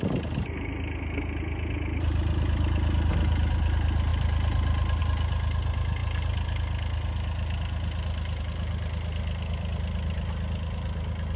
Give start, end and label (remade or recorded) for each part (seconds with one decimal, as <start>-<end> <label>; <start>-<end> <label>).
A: 0.0-11.4 recorded

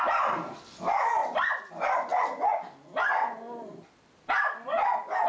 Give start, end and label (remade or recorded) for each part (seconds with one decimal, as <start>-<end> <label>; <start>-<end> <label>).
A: 0.0-5.3 recorded

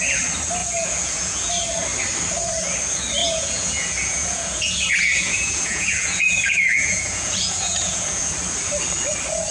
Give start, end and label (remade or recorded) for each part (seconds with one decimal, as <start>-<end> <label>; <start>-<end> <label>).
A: 0.0-0.6 recorded; 0.6-1.5 remade; 1.5-3.2 recorded; 3.2-8.2 remade; 8.2-9.5 recorded

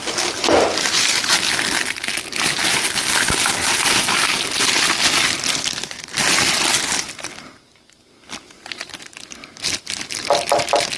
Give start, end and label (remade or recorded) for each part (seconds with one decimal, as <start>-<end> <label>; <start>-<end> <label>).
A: 0.0-11.0 recorded